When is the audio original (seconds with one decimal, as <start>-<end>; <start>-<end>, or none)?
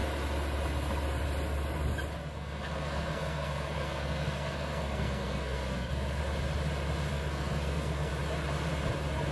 0.0-2.2; 6.2-7.1; 8.1-9.3